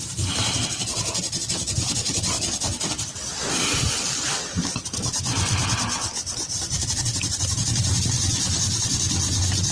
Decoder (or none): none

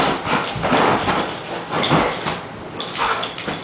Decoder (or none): none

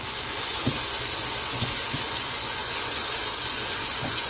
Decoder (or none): vocoder, Vocos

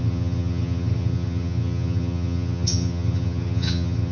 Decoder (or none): vocoder, HiFi-GAN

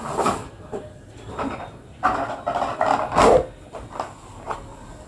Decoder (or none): none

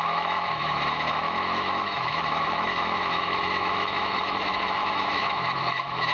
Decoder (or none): autoencoder, DAC-VAE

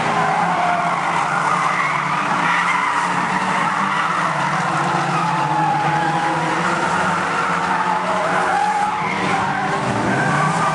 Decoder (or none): none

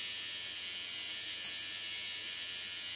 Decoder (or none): none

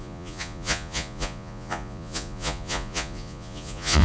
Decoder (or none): vocoder, Vocos